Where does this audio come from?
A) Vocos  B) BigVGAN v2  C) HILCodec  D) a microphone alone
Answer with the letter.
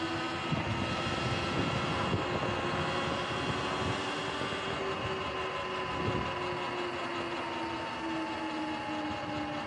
D